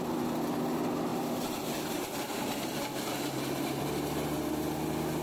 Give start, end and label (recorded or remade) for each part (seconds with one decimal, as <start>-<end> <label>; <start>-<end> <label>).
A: 0.0-1.1 recorded; 1.1-3.8 remade; 3.8-5.2 recorded